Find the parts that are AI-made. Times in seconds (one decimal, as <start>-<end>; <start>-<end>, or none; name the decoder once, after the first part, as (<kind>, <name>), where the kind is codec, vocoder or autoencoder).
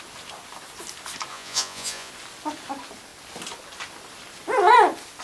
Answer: 1.3-2.1 (vocoder, Vocos)